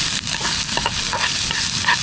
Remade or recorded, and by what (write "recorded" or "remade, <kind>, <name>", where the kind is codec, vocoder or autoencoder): recorded